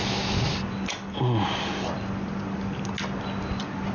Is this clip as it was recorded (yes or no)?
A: yes